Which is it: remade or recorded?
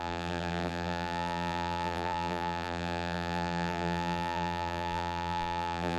remade